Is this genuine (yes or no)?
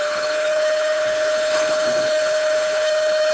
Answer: no